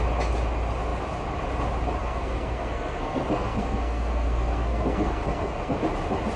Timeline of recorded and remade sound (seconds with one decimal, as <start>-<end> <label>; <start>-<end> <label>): 0.0-2.0 recorded; 2.0-5.8 remade; 5.8-6.4 recorded